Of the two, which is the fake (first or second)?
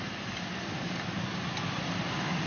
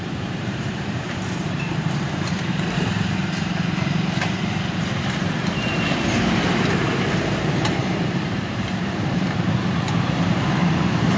second